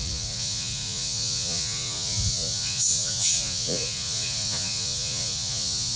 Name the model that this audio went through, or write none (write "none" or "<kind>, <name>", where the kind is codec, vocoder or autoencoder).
vocoder, Vocos